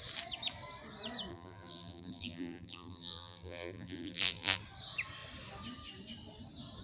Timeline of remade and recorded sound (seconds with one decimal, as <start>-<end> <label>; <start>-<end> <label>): 0.0-1.3 recorded; 1.3-4.6 remade; 4.6-6.8 recorded